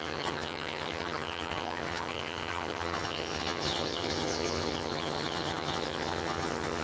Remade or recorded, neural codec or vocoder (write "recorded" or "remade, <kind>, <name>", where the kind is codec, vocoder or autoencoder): remade, vocoder, HiFi-GAN